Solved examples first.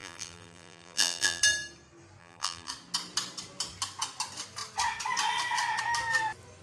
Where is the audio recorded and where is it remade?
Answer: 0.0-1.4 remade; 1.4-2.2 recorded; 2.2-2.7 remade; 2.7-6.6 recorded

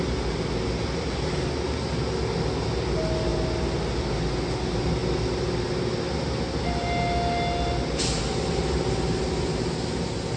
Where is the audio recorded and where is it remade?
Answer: 0.0-10.4 recorded

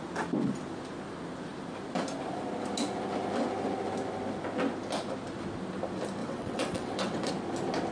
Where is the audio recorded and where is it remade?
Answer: 0.0-6.2 recorded; 6.2-7.3 remade; 7.3-7.9 recorded

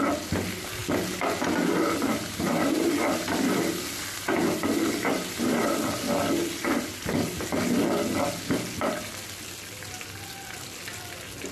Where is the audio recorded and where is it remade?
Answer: 0.0-11.5 recorded